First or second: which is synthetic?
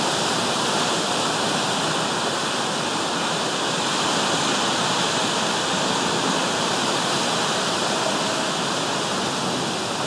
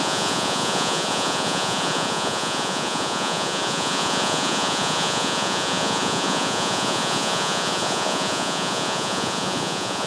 second